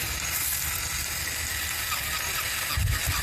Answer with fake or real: real